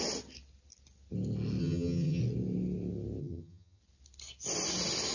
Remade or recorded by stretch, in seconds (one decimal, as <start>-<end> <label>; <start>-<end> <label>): 0.0-1.6 recorded; 1.6-2.2 remade; 2.2-3.2 recorded; 3.2-3.8 remade; 3.8-5.1 recorded